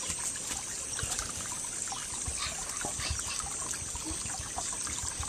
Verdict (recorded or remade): recorded